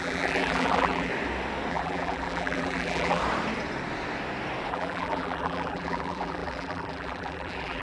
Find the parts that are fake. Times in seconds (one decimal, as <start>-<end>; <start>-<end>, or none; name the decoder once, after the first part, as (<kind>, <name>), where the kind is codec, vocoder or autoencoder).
0.0-1.1 (vocoder, BigVGAN v2); 1.7-3.2; 4.7-7.8